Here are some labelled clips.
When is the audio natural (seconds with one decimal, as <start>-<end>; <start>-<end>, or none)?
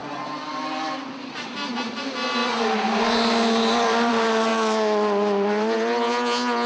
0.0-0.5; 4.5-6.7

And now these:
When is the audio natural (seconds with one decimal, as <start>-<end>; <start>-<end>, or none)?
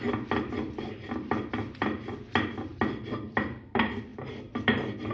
4.1-5.1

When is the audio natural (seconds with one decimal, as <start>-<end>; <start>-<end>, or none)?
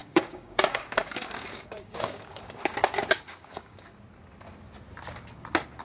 3.9-5.8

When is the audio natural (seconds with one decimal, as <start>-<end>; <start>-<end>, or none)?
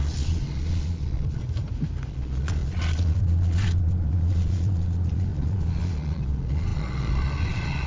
1.4-2.1